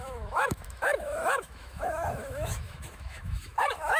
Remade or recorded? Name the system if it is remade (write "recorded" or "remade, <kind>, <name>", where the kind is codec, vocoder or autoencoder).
remade, autoencoder, DAC-VAE